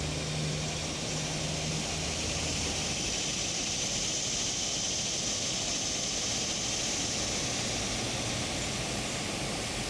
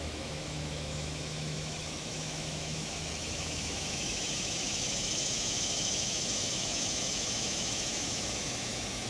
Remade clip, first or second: second